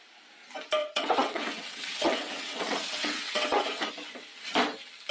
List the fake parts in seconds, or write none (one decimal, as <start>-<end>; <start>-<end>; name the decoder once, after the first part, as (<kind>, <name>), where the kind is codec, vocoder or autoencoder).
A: 0.8-3.9 (vocoder, WaveNeXt)

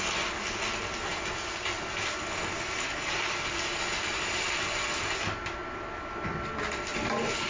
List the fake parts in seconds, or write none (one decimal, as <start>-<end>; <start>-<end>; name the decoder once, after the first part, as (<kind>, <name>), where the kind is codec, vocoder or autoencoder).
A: none

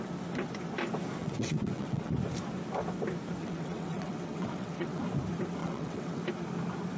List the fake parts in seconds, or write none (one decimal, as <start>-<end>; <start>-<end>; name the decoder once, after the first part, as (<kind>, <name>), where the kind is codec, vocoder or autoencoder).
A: 1.2-2.1 (vocoder, WaveNeXt); 3.4-5.0; 5.6-6.2